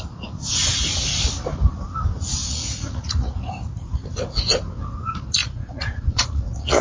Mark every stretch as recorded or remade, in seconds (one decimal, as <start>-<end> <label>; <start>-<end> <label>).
0.0-2.4 recorded; 2.4-3.4 remade; 3.4-5.4 recorded; 5.4-6.8 remade

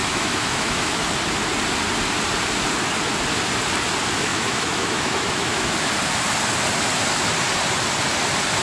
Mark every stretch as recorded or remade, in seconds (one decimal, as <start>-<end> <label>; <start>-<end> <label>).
0.0-1.1 remade; 1.1-4.3 recorded; 4.3-5.7 remade; 5.7-8.6 recorded